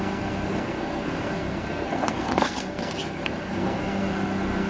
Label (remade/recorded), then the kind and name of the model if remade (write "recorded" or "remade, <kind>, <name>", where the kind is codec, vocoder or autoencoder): remade, codec, SNAC